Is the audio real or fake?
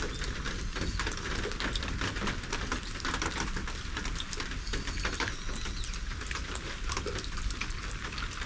real